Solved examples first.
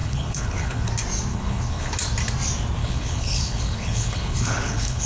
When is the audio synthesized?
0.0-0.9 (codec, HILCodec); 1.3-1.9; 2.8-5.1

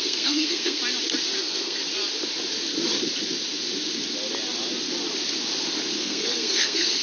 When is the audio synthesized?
0.0-0.8 (codec, SNAC); 1.4-1.8; 6.0-7.0